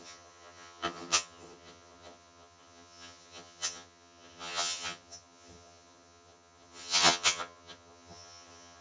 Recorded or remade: remade